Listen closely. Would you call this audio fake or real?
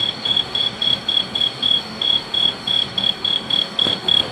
fake